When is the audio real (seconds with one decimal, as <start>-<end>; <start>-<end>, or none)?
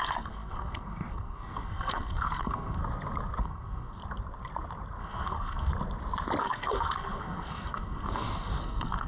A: 2.8-3.4; 4.0-5.0; 5.7-6.4